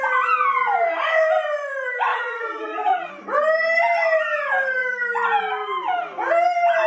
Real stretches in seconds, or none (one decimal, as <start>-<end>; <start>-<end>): 0.0-2.1; 3.1-6.9